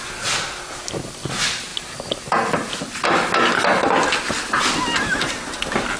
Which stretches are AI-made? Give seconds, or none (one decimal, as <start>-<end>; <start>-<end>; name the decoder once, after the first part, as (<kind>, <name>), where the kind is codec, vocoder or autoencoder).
none